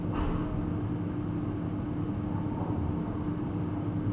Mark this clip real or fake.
real